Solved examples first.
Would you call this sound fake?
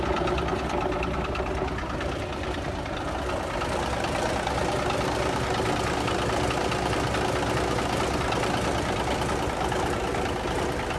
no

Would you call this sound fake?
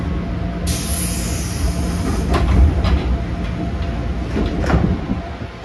no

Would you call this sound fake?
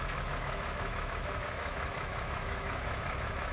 yes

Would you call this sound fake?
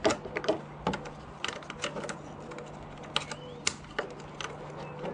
no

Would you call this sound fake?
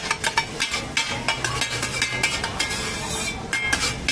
no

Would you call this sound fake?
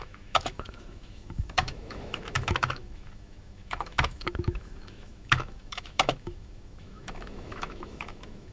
yes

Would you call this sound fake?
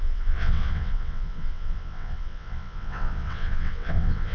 yes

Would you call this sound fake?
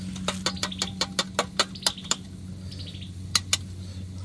no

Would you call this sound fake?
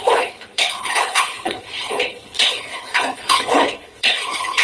yes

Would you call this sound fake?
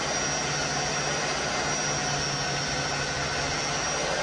no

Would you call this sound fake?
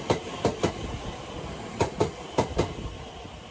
no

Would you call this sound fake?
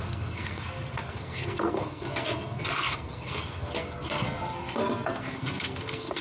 yes